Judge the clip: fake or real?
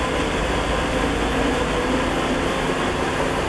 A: real